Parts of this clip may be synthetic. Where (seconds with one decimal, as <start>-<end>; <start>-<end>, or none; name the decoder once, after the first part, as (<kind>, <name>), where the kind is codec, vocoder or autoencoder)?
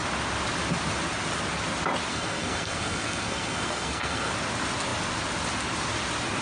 2.1-4.3 (codec, SNAC)